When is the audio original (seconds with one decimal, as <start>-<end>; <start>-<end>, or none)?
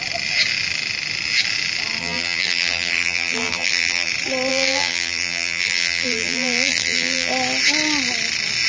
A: 0.0-2.0; 4.1-4.5; 7.3-8.7